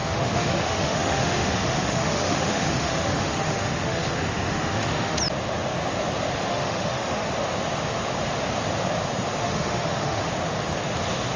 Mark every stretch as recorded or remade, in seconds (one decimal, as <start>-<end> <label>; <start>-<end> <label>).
0.0-5.2 remade; 5.2-6.5 recorded; 6.5-7.3 remade; 7.3-9.4 recorded; 9.4-10.3 remade; 10.3-11.4 recorded